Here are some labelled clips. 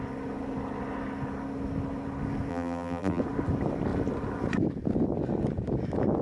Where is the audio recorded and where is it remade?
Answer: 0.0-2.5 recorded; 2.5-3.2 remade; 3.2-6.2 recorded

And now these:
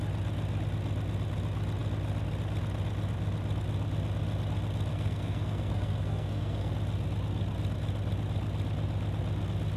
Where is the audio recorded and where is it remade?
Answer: 0.0-4.9 recorded; 4.9-6.7 remade; 6.7-9.8 recorded

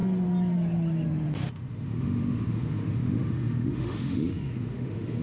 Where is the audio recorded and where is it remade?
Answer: 0.0-1.5 recorded; 1.5-5.2 remade

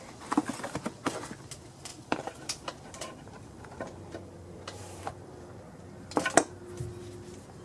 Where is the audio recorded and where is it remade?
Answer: 0.0-1.9 recorded; 1.9-5.8 remade; 5.8-7.6 recorded

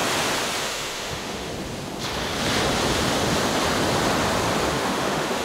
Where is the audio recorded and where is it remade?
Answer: 0.0-0.6 recorded; 0.6-1.5 remade; 1.5-4.7 recorded; 4.7-5.4 remade

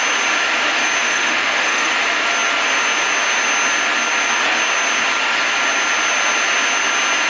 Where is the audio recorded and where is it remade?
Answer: 0.0-1.0 recorded; 1.0-1.9 remade; 1.9-7.3 recorded